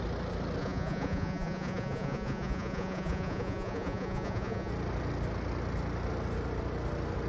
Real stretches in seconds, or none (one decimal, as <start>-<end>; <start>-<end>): 0.0-0.6; 4.7-7.3